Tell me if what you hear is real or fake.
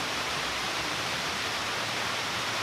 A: fake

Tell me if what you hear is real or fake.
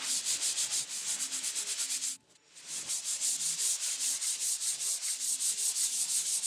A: real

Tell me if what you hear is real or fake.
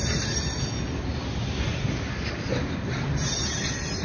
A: real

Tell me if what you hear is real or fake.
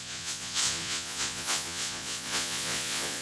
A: fake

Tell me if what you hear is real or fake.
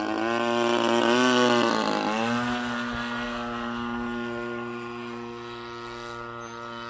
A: real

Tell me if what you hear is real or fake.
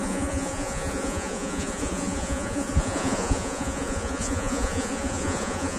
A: fake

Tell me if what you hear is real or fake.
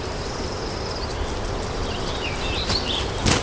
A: real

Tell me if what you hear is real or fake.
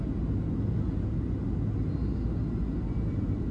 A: real